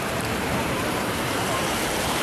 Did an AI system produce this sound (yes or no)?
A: yes